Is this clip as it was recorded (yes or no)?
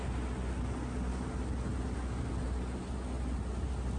yes